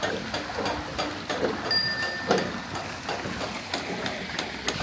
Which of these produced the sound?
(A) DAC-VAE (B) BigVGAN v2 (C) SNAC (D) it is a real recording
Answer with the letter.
D